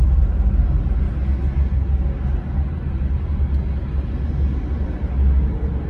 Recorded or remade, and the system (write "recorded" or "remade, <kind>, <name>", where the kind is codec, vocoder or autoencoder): recorded